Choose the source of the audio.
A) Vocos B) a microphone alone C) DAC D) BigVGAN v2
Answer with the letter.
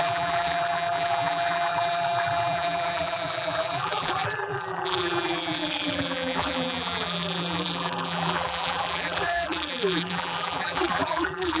D